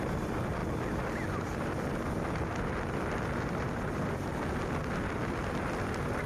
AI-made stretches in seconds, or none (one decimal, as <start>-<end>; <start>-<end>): none